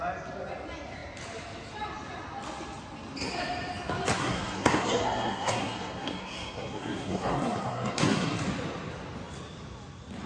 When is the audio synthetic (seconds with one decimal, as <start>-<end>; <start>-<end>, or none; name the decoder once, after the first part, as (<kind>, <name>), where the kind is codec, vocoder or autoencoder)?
4.2-8.4 (codec, SNAC)